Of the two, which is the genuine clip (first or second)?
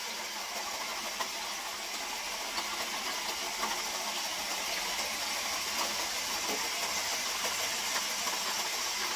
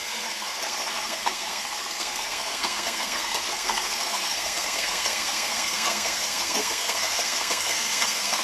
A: first